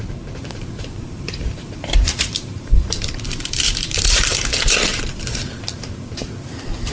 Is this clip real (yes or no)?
no